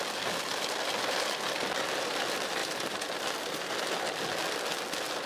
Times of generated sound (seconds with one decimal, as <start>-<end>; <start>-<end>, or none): 2.6-3.2